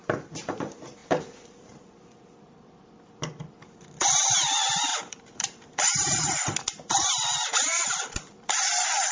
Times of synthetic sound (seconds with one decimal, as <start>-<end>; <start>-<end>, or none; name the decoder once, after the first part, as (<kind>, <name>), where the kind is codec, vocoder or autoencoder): 0.0-9.1 (vocoder, BigVGAN v2)